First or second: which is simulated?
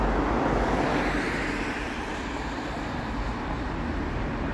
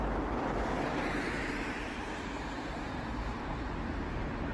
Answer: second